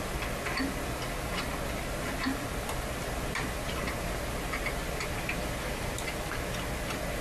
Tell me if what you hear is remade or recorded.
recorded